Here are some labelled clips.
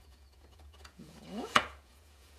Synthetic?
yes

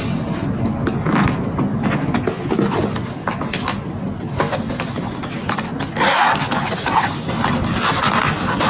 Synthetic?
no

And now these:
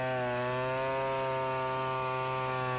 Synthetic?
no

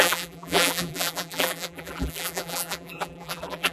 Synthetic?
yes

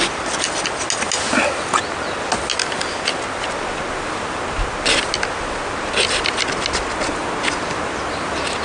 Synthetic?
no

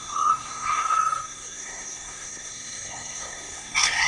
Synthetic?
yes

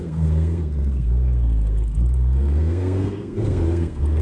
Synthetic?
yes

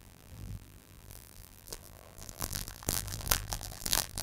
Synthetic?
yes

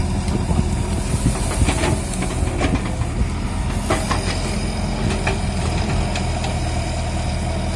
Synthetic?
no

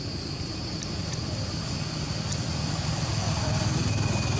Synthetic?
no